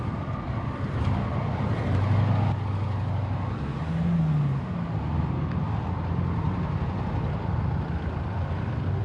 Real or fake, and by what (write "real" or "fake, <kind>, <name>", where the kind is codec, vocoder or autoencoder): real